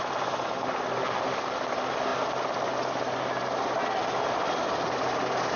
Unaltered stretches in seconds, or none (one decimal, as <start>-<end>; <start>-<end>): 0.0-5.6